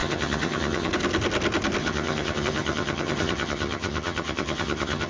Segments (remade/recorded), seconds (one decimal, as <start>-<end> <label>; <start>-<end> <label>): 0.0-0.9 remade; 0.9-1.8 recorded; 1.8-5.1 remade